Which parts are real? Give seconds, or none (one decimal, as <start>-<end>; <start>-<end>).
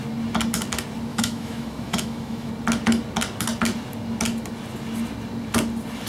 0.0-1.1; 2.5-6.1